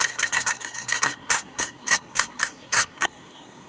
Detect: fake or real fake